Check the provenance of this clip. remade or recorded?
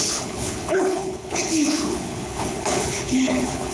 remade